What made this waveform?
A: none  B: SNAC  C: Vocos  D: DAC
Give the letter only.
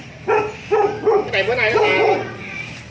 A